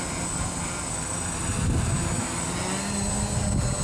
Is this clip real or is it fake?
real